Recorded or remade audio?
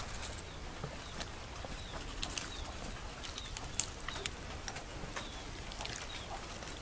recorded